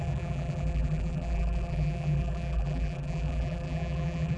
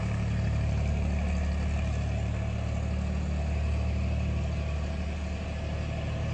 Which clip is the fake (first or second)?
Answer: first